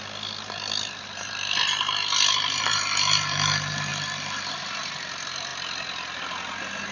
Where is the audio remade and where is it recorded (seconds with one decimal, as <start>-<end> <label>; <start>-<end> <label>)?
0.0-6.9 recorded